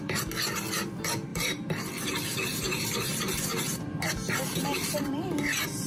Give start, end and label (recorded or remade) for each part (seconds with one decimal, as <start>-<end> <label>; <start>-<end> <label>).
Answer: 0.0-1.3 recorded; 1.3-1.9 remade; 1.9-2.3 recorded; 2.3-5.9 remade